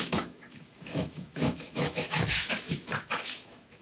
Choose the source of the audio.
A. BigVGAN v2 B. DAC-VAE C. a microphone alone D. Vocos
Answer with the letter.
B